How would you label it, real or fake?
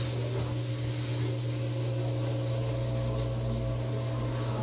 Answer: real